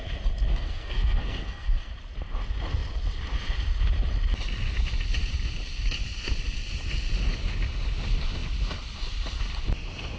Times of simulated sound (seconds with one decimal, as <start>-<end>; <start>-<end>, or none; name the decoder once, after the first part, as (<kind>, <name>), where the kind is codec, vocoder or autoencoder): 0.5-1.9 (codec, SNAC)